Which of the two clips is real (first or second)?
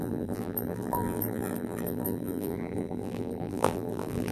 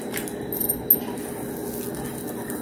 second